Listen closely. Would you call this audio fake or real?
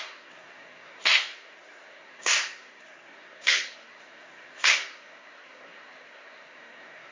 fake